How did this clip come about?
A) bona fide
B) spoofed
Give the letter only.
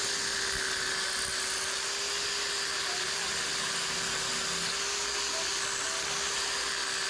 A